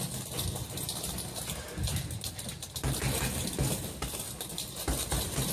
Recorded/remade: recorded